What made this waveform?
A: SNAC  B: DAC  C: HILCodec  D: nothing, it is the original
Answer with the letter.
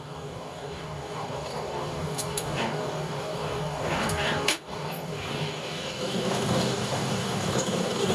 B